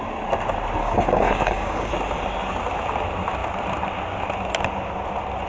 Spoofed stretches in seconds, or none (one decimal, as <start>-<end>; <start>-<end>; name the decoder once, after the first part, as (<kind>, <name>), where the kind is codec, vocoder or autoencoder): 0.8-1.9 (codec, DAC)